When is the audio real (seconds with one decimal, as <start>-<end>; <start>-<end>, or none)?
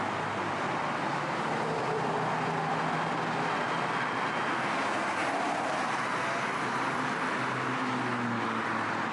0.0-9.1